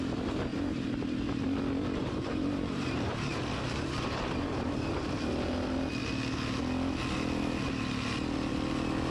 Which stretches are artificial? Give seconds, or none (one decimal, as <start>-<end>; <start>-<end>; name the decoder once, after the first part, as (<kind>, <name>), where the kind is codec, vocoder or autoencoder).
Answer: 0.5-1.6 (vocoder, BigVGAN v2); 2.0-5.3

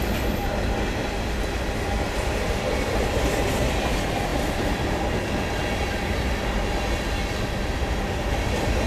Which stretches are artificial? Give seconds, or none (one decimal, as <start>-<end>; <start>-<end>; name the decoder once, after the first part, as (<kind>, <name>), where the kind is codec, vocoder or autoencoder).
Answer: none